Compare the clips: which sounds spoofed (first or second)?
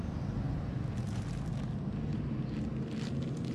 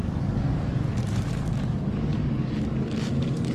second